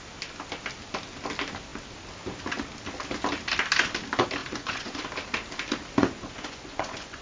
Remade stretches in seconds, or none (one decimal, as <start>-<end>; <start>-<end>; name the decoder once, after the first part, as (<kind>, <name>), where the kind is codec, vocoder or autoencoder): 4.4-5.0 (vocoder, Vocos); 6.0-7.2